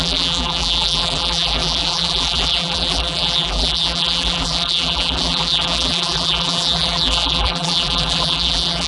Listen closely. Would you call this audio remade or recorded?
remade